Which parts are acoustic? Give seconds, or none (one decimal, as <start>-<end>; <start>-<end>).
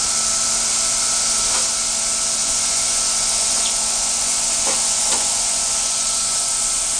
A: 0.0-2.4; 6.6-7.0